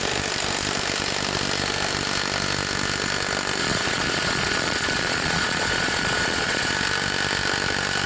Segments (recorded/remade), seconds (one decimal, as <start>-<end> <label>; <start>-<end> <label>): 0.0-3.6 recorded; 3.6-6.7 remade; 6.7-8.1 recorded